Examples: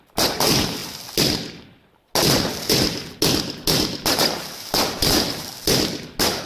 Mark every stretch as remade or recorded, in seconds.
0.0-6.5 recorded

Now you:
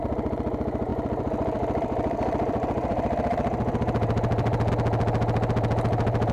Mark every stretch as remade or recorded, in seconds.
0.0-0.9 recorded; 0.9-4.7 remade; 4.7-6.3 recorded

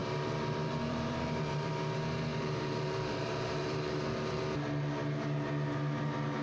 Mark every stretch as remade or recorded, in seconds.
0.0-1.7 remade; 1.7-2.3 recorded; 2.3-4.4 remade; 4.4-6.4 recorded

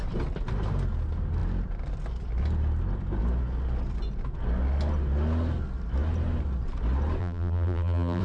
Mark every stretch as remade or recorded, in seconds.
0.0-7.2 recorded; 7.2-8.2 remade

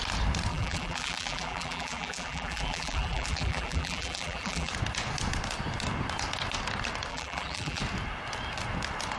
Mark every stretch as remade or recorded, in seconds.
0.0-0.5 recorded; 0.5-4.7 remade; 4.7-7.1 recorded; 7.1-7.8 remade; 7.8-9.2 recorded

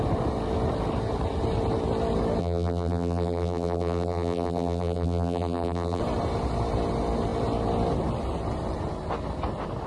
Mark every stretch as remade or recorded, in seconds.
0.0-2.4 recorded; 2.4-6.0 remade; 6.0-9.9 recorded

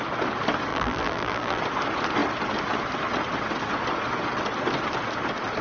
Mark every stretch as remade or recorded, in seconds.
0.0-0.7 recorded; 0.7-1.6 remade; 1.6-5.6 recorded

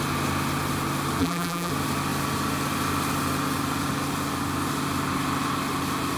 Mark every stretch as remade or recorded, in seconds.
0.0-1.2 recorded; 1.2-1.7 remade; 1.7-6.2 recorded